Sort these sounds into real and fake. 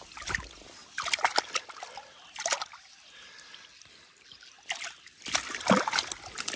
real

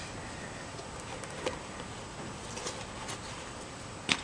real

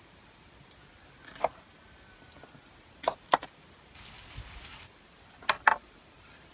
real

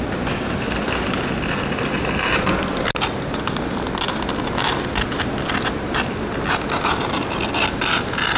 real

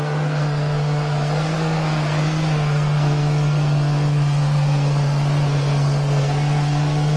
fake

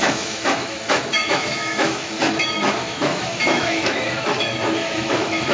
fake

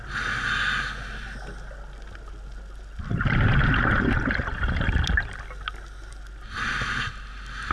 real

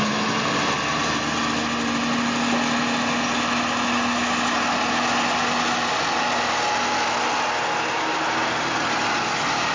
real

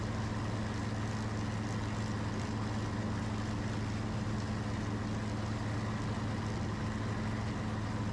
real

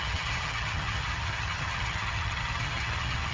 fake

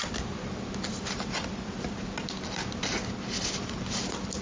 real